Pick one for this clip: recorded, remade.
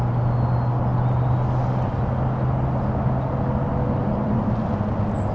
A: recorded